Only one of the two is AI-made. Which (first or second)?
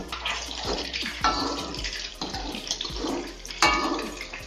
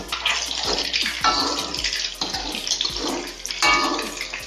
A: first